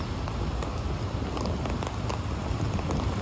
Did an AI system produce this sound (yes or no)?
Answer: no